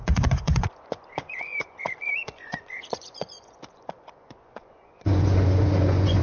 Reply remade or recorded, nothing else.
remade